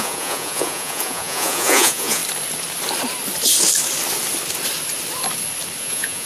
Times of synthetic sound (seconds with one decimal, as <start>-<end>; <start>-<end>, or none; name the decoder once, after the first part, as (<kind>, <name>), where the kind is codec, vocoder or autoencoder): 0.0-2.2 (vocoder, Vocos); 5.8-6.3